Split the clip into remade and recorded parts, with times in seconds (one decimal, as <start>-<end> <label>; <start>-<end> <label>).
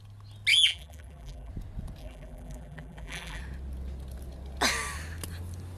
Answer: 0.0-0.5 recorded; 0.5-1.5 remade; 1.5-2.0 recorded; 2.0-3.4 remade; 3.4-5.8 recorded